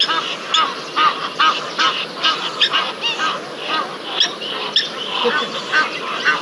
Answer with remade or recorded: recorded